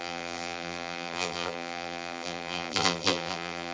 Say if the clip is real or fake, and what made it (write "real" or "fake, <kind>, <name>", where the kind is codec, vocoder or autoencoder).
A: fake, vocoder, BigVGAN v2